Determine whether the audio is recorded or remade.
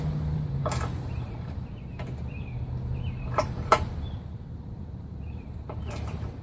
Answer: remade